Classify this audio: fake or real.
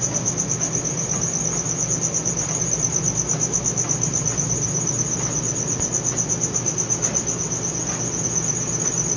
real